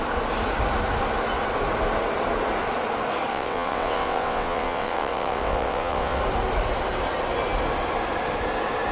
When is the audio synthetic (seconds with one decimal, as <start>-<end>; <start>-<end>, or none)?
3.3-6.2